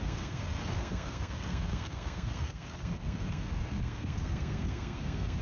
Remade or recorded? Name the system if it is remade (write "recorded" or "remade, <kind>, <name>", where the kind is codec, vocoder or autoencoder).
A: remade, codec, SNAC